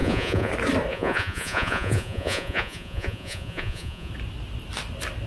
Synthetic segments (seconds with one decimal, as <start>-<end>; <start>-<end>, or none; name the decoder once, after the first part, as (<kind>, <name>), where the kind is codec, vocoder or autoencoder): 0.0-0.5 (vocoder, Vocos); 0.9-4.1